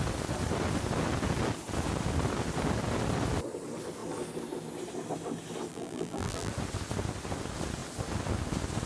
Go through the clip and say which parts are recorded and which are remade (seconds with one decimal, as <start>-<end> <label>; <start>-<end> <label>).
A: 0.0-5.7 recorded; 5.7-6.5 remade; 6.5-8.9 recorded